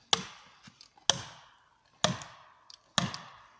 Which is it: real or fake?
real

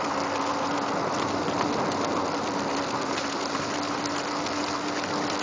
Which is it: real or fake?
real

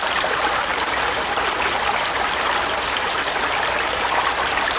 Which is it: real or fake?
real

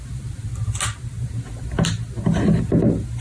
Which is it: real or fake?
real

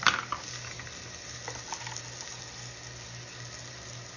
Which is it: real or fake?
real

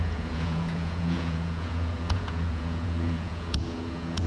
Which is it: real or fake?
fake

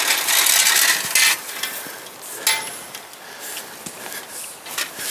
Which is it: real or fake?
real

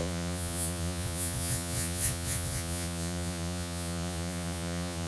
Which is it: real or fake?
fake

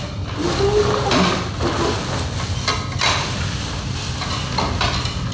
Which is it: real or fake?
real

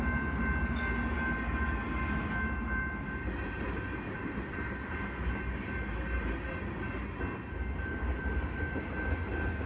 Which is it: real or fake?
real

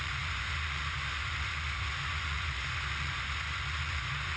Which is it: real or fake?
fake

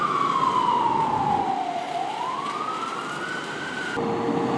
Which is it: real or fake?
real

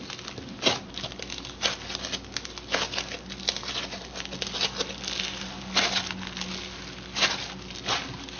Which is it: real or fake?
real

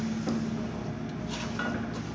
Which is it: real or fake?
real